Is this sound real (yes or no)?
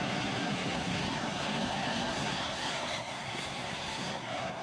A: no